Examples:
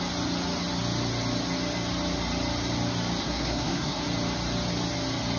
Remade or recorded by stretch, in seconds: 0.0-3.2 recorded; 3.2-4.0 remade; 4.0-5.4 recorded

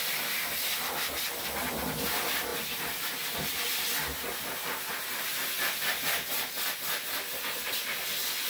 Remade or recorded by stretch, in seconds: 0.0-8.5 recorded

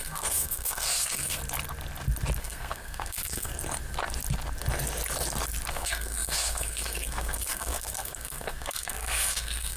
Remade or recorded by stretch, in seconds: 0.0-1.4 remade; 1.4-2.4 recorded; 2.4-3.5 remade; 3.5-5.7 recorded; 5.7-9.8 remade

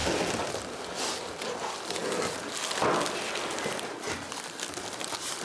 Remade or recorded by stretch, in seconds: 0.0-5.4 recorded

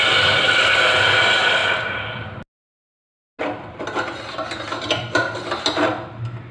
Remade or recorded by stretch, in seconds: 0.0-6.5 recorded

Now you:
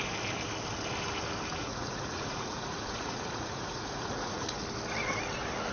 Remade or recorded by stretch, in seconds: 0.0-1.6 recorded; 1.6-4.6 remade; 4.6-5.7 recorded

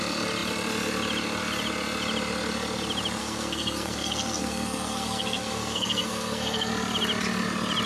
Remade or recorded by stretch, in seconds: 0.0-3.2 recorded; 3.2-6.7 remade; 6.7-7.9 recorded